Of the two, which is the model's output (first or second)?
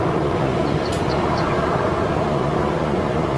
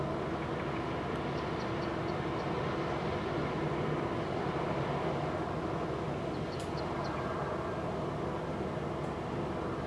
first